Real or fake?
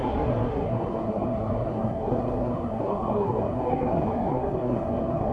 fake